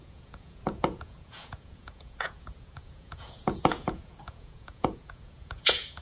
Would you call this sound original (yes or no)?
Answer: no